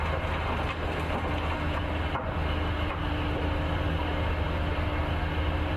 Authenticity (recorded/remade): recorded